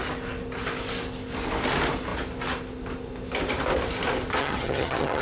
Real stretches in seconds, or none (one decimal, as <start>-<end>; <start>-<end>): 0.0-4.4